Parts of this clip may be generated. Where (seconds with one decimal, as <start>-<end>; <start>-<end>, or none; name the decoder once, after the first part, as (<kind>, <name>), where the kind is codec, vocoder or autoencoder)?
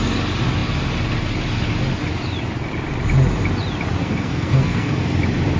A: 4.0-5.0 (codec, SNAC)